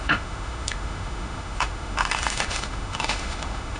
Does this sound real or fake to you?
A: fake